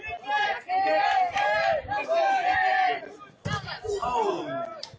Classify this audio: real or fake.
real